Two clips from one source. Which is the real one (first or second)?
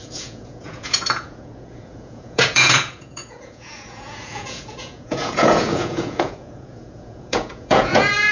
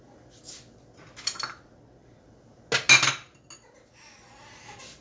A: second